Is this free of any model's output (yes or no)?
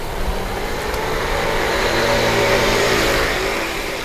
no